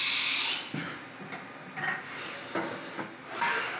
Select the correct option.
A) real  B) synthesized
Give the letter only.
A